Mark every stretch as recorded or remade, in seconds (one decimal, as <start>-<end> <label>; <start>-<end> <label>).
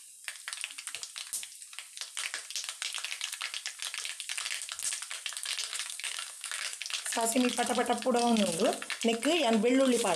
0.0-5.7 recorded; 5.7-6.8 remade; 6.8-8.2 recorded; 8.2-8.9 remade; 8.9-10.2 recorded